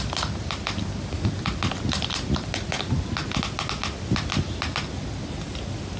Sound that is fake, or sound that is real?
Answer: real